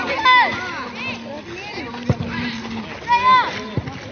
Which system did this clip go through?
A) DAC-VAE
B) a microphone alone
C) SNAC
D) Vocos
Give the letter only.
B